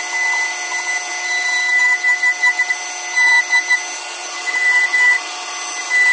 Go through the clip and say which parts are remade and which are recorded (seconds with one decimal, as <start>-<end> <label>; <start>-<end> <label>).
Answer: 0.0-6.1 recorded